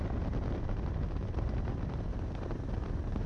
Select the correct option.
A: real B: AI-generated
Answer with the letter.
A